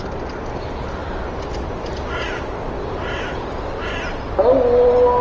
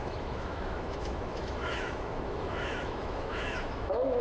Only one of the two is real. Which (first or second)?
first